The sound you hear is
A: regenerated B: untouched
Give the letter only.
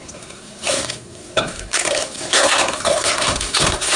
A